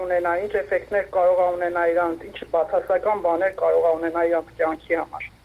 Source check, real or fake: real